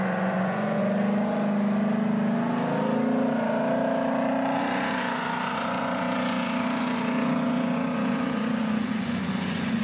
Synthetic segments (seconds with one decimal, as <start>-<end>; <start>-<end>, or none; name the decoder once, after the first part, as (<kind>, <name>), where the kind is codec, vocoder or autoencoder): 0.0-0.8 (vocoder, Vocos); 4.6-9.8